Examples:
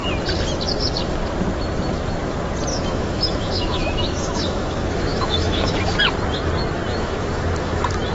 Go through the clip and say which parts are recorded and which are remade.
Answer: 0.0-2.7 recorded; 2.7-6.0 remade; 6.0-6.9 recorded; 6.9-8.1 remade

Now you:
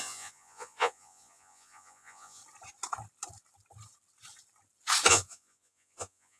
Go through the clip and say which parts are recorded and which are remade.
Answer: 0.0-2.4 remade; 2.4-5.1 recorded; 5.1-6.4 remade

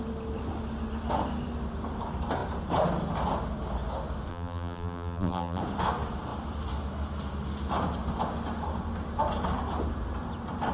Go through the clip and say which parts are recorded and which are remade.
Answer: 0.0-4.3 recorded; 4.3-5.6 remade; 5.6-10.7 recorded

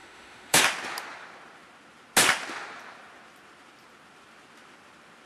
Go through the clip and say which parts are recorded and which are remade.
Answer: 0.0-0.6 remade; 0.6-5.3 recorded

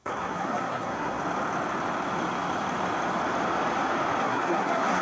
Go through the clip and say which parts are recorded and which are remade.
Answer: 0.0-1.2 remade; 1.2-4.2 recorded; 4.2-5.0 remade